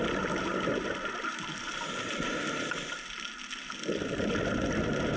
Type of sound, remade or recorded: recorded